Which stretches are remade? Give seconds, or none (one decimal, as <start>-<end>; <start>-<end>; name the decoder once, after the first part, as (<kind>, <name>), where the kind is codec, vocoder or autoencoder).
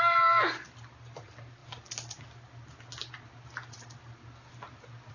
none